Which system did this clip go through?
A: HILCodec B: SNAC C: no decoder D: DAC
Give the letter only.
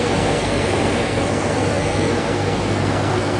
B